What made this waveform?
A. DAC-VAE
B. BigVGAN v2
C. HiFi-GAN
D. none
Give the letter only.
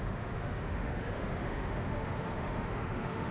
A